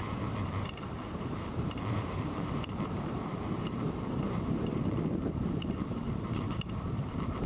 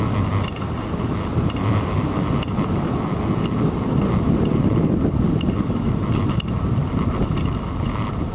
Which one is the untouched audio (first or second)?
second